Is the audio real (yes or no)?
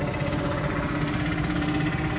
yes